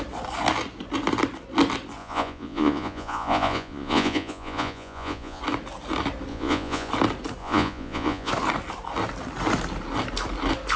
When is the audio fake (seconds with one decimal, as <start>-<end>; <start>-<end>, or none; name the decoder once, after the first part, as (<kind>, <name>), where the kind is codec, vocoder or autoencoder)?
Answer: 2.0-5.4 (vocoder, Vocos); 6.3-6.9; 7.4-8.3